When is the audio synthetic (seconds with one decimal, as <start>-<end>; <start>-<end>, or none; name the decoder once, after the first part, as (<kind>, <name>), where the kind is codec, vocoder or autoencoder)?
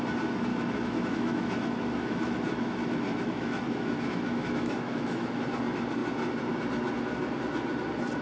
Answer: 0.5-5.4 (autoencoder, DAC-VAE)